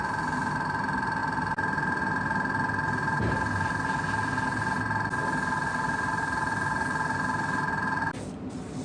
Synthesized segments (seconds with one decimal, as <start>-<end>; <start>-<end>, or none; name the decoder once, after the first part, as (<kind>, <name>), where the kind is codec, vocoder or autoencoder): none